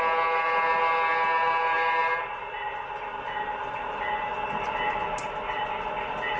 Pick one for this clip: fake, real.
real